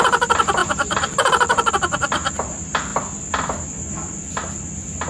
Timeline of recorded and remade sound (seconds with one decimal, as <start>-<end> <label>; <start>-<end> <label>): 0.0-0.6 recorded; 0.6-1.7 remade; 1.7-5.1 recorded